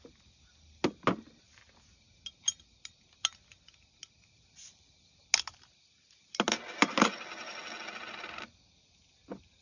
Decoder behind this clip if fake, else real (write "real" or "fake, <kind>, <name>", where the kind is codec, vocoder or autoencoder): real